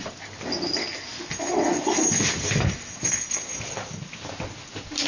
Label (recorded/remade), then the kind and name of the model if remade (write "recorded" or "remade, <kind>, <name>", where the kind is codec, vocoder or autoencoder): recorded